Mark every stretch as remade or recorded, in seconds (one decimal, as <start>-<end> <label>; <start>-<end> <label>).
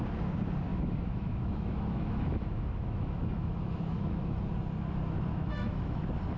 0.0-0.7 recorded; 0.7-4.5 remade; 4.5-5.3 recorded; 5.3-6.0 remade; 6.0-6.4 recorded